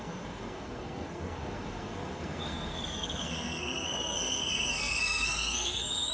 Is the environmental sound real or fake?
fake